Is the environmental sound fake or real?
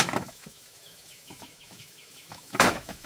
fake